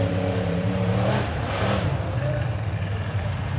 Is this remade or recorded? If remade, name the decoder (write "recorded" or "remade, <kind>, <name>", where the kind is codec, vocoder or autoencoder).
remade, vocoder, BigVGAN v2